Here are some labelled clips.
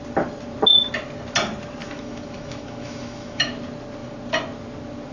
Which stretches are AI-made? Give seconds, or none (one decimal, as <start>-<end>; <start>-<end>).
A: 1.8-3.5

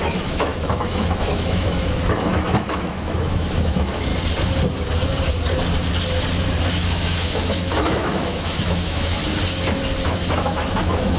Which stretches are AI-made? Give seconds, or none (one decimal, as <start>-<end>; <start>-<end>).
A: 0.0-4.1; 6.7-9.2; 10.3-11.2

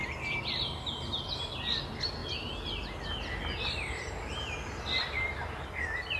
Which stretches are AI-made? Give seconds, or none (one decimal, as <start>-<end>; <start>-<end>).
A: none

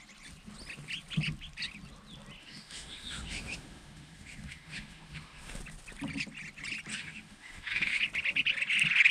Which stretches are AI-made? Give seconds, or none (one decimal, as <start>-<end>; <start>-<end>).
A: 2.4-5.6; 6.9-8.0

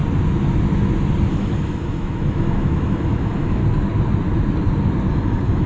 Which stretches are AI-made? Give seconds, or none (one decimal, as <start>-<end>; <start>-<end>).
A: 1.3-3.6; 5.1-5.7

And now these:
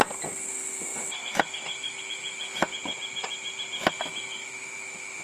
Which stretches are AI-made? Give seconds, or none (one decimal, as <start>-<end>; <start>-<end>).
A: 0.5-2.7; 3.9-5.2

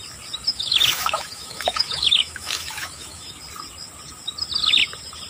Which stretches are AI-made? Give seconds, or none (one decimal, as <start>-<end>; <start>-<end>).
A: 0.5-3.4